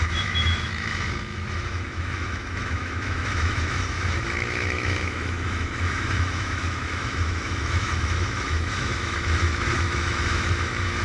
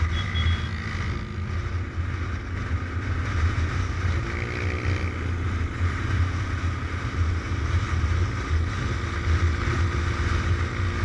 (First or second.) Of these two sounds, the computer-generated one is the first